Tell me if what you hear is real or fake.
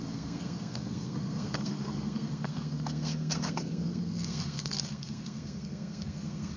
fake